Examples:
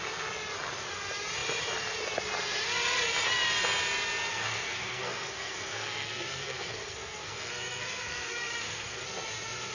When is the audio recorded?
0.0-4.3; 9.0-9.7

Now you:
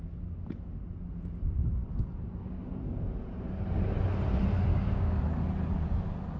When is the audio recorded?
0.0-4.7; 5.2-6.4

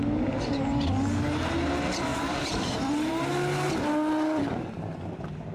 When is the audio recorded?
0.0-2.1; 3.3-5.5

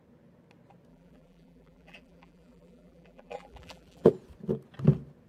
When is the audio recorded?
0.0-0.9; 4.1-5.3

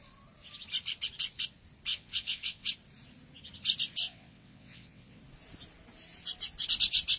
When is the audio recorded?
0.0-1.9; 2.7-4.0; 5.2-7.2

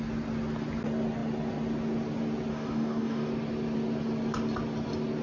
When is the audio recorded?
0.0-2.5; 3.3-5.2

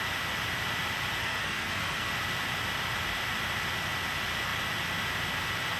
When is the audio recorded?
0.0-1.2; 2.1-5.8

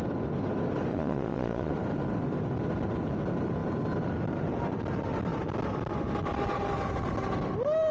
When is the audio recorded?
0.0-0.9; 1.7-7.9